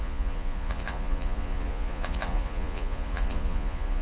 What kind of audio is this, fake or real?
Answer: fake